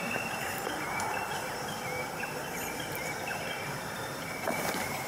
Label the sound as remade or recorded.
remade